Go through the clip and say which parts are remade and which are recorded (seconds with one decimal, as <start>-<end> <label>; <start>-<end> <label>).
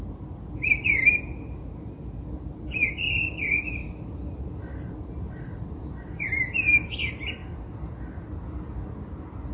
0.0-9.5 recorded